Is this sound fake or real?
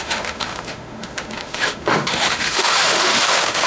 fake